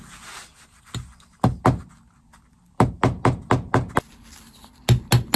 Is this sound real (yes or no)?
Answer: yes